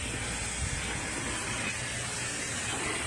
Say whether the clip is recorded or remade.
recorded